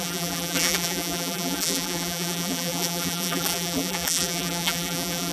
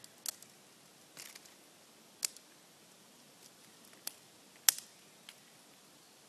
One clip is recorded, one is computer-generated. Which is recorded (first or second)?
second